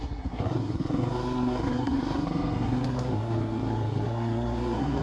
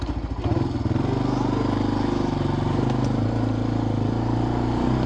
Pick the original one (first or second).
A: second